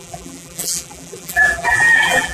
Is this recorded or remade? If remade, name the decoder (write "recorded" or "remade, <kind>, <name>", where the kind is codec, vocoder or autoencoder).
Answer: remade, vocoder, BigVGAN v2